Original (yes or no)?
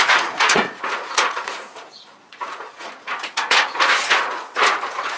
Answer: no